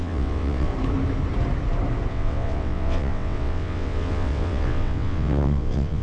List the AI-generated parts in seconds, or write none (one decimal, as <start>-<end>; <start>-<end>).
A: 0.0-0.7; 2.1-6.0